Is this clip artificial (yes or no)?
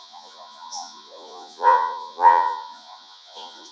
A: yes